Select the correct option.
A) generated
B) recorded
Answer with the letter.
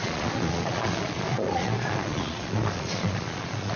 A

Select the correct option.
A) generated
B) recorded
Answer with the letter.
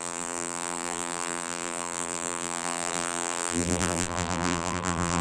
A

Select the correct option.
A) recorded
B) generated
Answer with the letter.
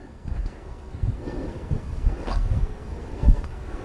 B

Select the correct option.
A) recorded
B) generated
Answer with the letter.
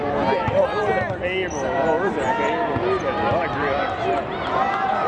A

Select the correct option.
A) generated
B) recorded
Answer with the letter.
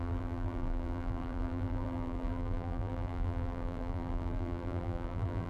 A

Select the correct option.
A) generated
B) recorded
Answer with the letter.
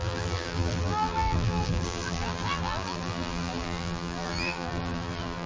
A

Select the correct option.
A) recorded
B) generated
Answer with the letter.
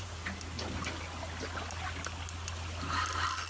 A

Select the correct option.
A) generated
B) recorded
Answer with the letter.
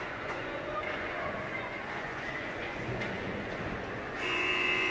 A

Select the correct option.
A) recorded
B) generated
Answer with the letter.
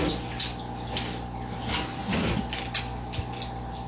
A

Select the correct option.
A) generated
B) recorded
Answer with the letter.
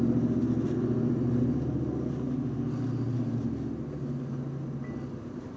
B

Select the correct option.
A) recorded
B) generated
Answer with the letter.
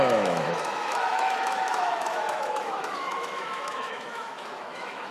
B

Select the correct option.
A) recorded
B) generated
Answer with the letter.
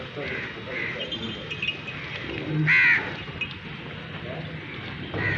A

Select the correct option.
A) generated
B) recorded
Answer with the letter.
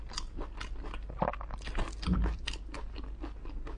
B